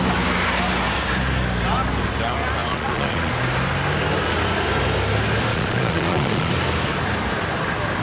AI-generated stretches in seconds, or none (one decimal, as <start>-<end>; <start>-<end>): 2.6-3.3; 5.5-6.5